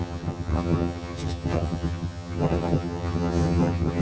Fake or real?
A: fake